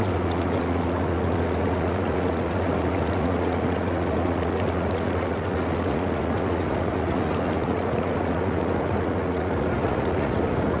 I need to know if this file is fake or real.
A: fake